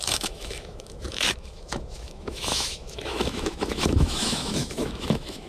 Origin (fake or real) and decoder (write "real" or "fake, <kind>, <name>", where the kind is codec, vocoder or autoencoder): fake, autoencoder, DAC-VAE